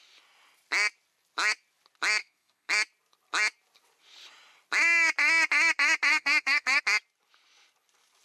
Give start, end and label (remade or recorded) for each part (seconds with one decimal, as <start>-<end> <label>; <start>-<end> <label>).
0.0-2.2 recorded; 2.2-2.7 remade; 2.7-6.1 recorded; 6.1-6.8 remade; 6.8-8.2 recorded